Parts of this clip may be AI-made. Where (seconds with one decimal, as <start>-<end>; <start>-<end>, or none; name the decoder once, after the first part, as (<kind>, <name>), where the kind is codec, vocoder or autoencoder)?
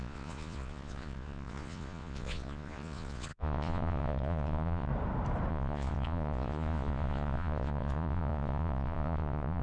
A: 0.0-4.9 (vocoder, Vocos); 5.5-9.6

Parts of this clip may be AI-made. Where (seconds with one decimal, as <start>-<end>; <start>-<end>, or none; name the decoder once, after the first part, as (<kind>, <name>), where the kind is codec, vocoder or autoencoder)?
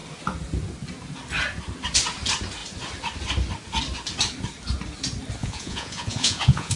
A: 5.4-6.8 (vocoder, Vocos)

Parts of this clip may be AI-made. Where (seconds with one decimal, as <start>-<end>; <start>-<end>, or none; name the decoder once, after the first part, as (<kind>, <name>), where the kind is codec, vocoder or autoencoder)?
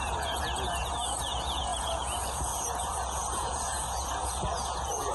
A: 0.0-5.1 (vocoder, Vocos)